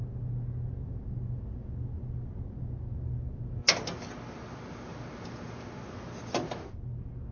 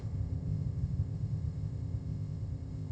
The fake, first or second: second